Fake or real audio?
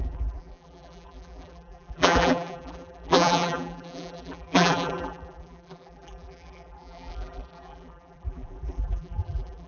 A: fake